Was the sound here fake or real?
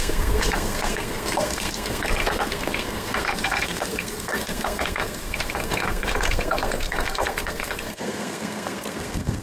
fake